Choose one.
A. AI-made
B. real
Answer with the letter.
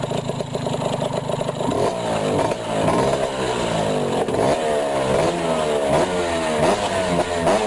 B